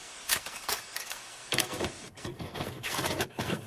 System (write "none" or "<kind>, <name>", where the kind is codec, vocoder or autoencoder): codec, SNAC